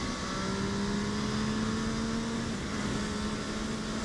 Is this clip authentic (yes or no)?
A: yes